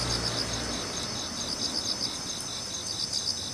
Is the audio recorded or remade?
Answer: recorded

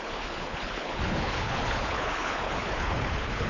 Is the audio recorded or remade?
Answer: remade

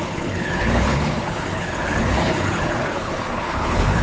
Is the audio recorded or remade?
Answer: remade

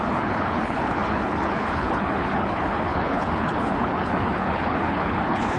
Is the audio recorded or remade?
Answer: remade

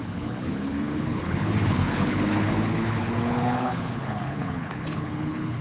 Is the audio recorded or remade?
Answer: remade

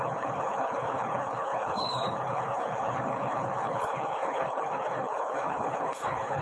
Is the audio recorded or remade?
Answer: remade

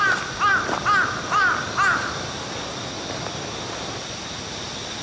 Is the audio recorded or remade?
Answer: recorded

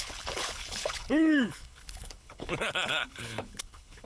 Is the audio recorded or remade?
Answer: remade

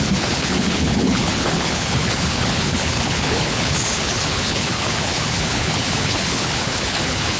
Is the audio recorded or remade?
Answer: remade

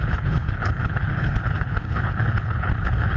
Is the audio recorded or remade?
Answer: remade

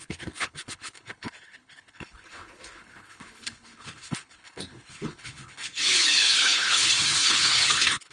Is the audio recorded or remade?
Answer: remade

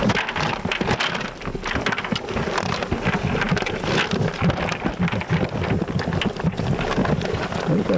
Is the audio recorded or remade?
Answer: recorded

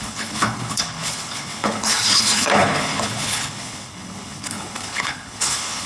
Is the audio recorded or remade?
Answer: remade